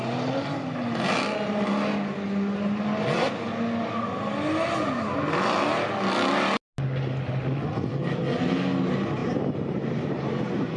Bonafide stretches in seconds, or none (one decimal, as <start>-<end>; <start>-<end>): 0.0-9.2